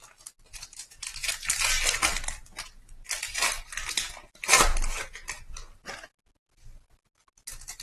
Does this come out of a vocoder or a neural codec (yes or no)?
no